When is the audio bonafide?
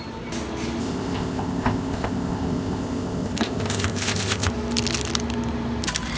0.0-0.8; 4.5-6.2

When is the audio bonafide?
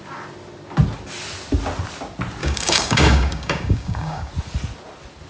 0.0-2.4; 4.3-5.3